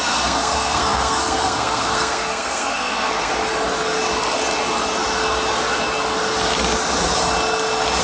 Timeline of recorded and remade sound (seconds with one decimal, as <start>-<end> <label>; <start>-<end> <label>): 0.0-3.3 remade; 3.3-8.0 recorded